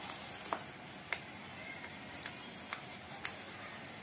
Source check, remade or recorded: recorded